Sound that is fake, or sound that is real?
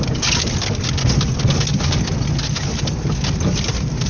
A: real